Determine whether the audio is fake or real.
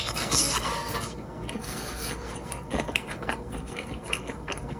fake